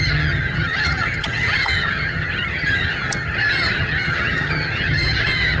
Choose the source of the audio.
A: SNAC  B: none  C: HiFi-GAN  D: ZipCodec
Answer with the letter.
C